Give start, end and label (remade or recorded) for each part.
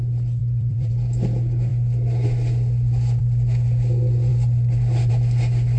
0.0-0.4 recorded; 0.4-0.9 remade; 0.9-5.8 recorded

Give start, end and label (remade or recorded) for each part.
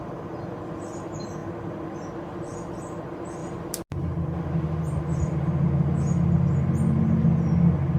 0.0-8.0 recorded